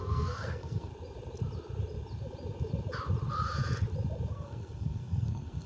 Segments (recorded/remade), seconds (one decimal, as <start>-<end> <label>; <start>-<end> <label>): 0.0-0.9 remade; 0.9-4.3 recorded; 4.3-5.7 remade